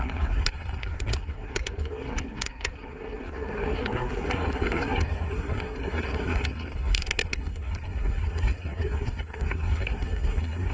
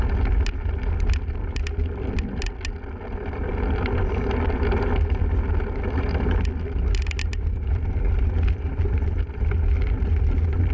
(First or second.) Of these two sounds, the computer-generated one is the first